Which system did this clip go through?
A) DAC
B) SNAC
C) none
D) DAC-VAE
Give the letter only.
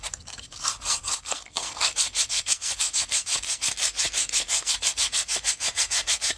B